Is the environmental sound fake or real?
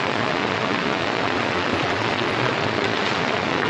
fake